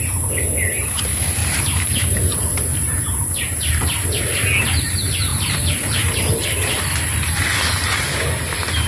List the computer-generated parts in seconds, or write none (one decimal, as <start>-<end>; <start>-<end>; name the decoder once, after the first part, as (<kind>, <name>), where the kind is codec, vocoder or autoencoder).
1.4-4.2 (vocoder, BigVGAN v2); 5.3-6.1